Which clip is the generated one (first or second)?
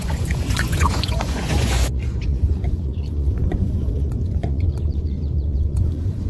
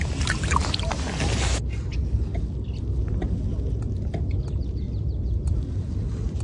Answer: first